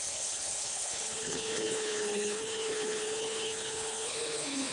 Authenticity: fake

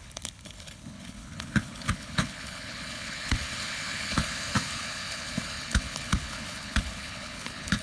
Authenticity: fake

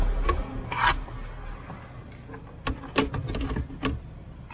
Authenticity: real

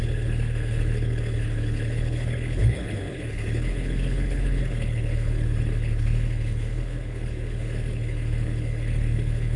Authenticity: fake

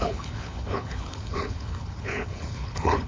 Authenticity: fake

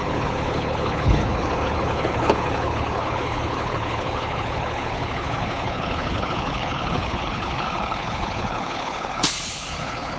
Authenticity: fake